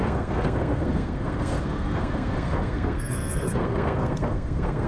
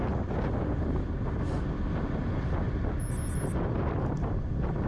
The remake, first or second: first